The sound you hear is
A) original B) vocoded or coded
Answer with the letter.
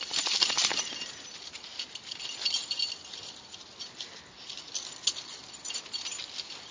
A